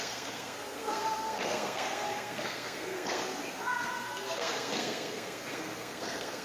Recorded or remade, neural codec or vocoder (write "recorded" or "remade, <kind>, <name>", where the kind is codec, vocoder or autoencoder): remade, codec, SNAC